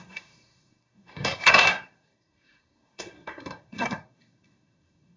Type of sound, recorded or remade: remade